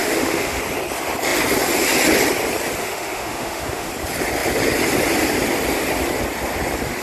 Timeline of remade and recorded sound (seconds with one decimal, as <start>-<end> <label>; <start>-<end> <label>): 0.0-0.6 remade; 0.6-2.8 recorded; 2.8-3.9 remade; 3.9-7.0 recorded

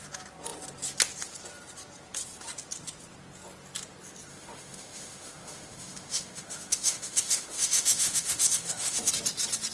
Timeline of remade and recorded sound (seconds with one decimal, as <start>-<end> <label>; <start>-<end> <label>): 0.0-4.3 recorded; 4.3-9.1 remade; 9.1-9.7 recorded

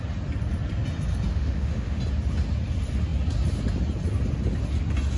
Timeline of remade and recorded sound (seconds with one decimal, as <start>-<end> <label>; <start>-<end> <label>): 0.0-1.3 recorded; 1.3-2.0 remade; 2.0-5.2 recorded

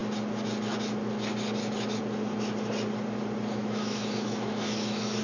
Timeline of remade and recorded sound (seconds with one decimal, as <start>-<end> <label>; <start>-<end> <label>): 0.0-3.6 recorded; 3.6-5.2 remade

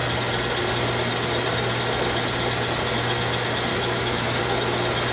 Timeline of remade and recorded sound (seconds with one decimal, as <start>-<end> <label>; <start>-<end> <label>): 0.0-3.7 recorded; 3.7-4.4 remade; 4.4-5.1 recorded